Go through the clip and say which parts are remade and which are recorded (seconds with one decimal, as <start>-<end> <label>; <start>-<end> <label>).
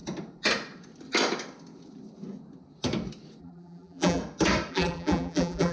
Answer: 0.0-3.4 recorded; 3.4-4.2 remade; 4.2-4.7 recorded; 4.7-5.7 remade